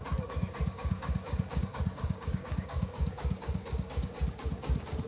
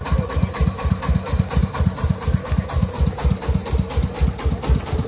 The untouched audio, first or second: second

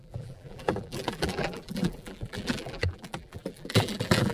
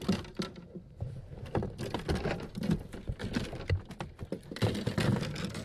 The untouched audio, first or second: second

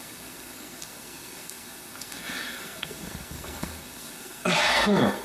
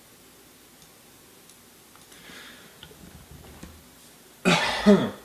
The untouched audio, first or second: second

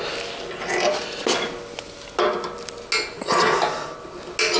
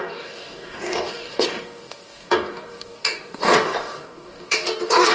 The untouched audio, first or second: first